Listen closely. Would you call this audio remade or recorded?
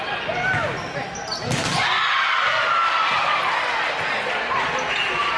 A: recorded